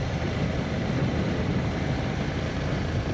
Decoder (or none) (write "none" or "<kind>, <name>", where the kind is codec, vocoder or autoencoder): vocoder, BigVGAN v2